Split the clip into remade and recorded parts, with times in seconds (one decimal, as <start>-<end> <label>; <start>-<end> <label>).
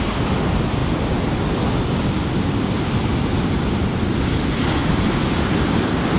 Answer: 0.0-6.2 recorded